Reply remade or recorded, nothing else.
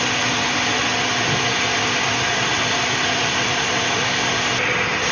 recorded